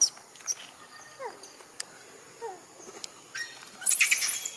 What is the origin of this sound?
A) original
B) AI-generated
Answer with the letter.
A